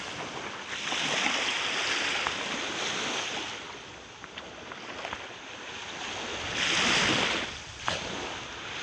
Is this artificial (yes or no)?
no